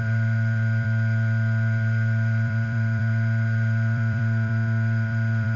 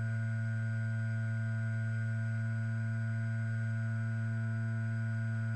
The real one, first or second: second